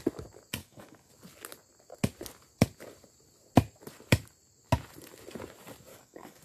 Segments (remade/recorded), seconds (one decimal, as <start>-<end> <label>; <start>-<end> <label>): 0.0-0.6 recorded; 0.6-1.1 remade; 1.1-5.9 recorded; 5.9-6.4 remade

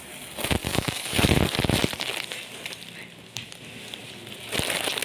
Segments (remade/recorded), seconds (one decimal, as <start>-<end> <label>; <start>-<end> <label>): 0.0-0.6 recorded; 0.6-1.4 remade; 1.4-5.0 recorded

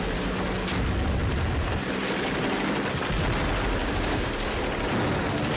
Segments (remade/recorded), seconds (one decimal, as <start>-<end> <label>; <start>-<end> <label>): 0.0-3.8 recorded; 3.8-4.3 remade; 4.3-5.6 recorded

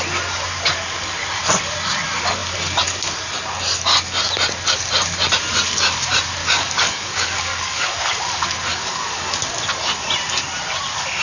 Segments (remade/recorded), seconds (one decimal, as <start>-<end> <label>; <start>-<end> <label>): 0.0-6.4 recorded; 6.4-8.2 remade; 8.2-8.7 recorded; 8.7-9.4 remade; 9.4-11.2 recorded

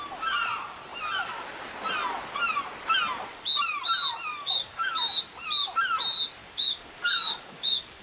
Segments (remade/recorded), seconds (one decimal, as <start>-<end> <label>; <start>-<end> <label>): 0.0-4.3 recorded; 4.3-5.2 remade; 5.2-6.4 recorded; 6.4-8.0 remade

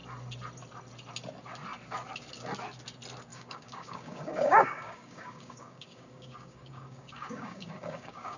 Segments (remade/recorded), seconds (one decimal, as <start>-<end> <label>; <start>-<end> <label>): 0.0-3.3 recorded; 3.3-8.4 remade

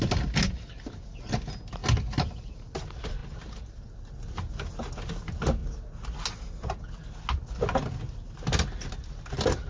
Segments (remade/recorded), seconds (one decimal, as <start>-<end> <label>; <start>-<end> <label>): 0.0-9.7 recorded

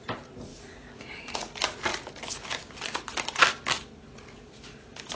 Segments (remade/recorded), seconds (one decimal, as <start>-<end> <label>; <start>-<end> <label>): 0.0-0.5 recorded; 0.5-1.0 remade; 1.0-5.1 recorded